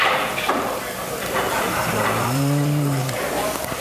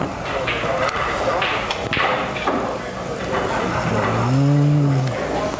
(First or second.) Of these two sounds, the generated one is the first